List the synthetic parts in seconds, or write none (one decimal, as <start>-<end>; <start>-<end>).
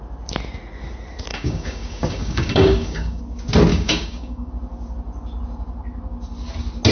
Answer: 1.3-3.2; 3.7-4.5